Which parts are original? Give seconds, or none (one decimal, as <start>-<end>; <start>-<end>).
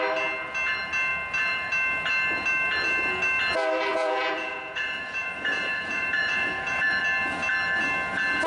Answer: 0.0-3.9; 7.0-8.5